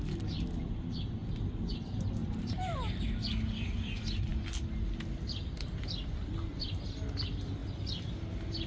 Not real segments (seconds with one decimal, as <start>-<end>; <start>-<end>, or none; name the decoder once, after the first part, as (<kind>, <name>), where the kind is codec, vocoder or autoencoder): 2.2-3.1 (vocoder, BigVGAN v2)